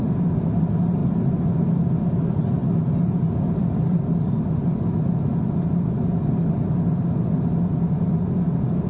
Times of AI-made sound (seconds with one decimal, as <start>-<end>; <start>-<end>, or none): none